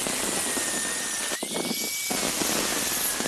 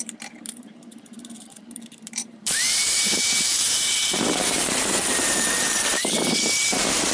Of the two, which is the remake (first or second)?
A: second